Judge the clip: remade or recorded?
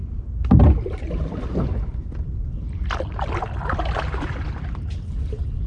recorded